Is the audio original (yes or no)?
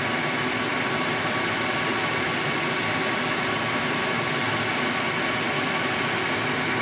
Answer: yes